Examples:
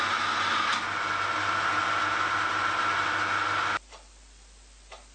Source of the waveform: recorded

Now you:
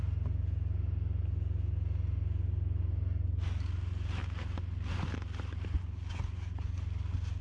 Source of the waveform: recorded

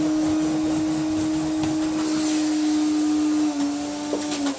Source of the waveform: recorded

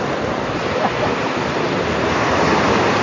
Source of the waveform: recorded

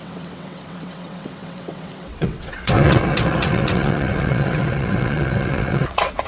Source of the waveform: remade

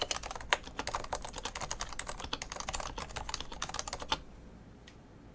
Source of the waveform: recorded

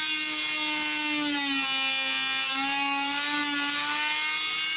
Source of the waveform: recorded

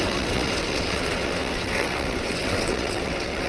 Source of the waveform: remade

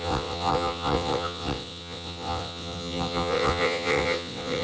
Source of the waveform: remade